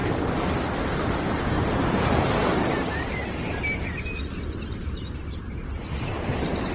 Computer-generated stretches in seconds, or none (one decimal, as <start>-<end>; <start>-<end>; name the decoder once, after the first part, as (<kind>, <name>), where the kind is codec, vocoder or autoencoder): 0.0-6.7 (vocoder, BigVGAN v2)